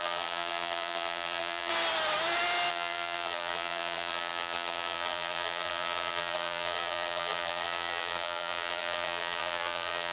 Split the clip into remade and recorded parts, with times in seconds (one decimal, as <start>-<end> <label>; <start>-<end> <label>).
0.0-1.7 remade; 1.7-2.7 recorded; 2.7-10.1 remade